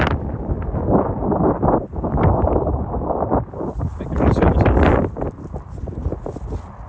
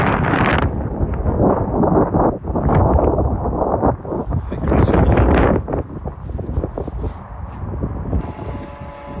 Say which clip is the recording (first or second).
second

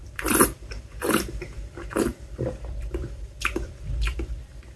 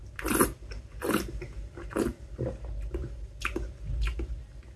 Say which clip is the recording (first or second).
second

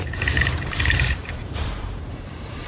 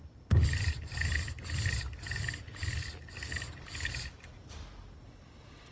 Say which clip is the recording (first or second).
second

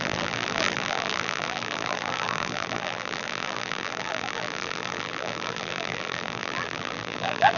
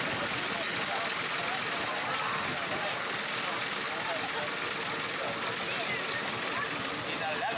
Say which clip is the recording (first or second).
second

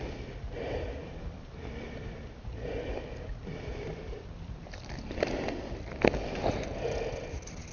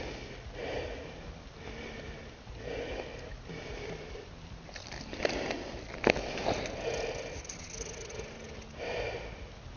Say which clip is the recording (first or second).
second